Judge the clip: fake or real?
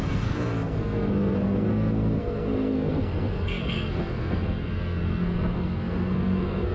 fake